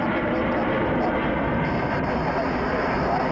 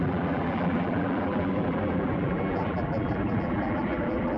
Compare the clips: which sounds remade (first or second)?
second